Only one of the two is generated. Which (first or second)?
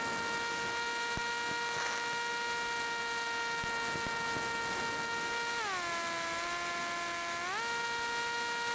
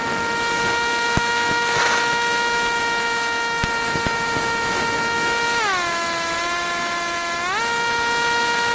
second